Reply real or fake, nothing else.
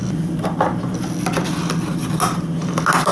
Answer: real